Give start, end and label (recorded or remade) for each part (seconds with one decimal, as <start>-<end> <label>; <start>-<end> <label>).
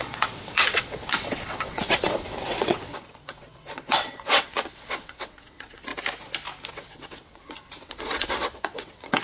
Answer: 0.0-5.9 remade; 5.9-6.7 recorded; 6.7-9.2 remade